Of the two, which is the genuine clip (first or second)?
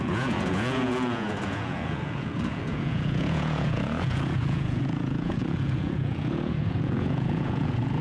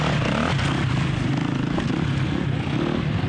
second